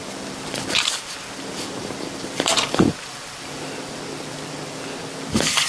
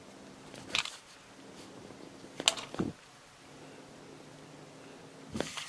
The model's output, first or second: first